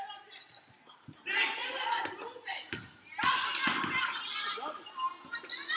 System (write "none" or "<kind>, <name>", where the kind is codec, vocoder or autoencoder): none